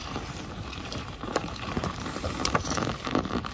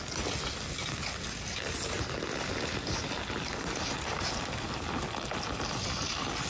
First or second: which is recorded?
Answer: second